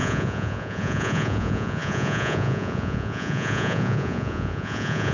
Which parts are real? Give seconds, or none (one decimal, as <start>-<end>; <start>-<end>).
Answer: none